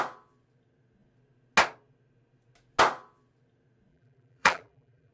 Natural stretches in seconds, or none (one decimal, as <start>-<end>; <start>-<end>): 0.0-3.9